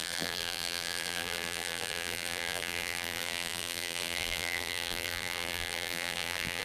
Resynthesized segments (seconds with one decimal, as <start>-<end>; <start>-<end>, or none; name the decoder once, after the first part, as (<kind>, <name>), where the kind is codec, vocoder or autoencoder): 0.0-6.6 (vocoder, BigVGAN v2)